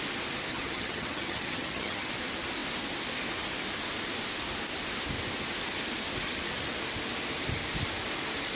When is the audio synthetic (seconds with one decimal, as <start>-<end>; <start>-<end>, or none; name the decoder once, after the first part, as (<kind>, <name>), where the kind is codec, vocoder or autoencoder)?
0.5-2.1 (vocoder, HiFi-GAN)